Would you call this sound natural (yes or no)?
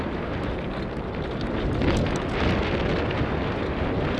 yes